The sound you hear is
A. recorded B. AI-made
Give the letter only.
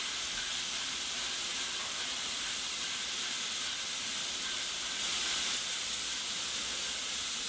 A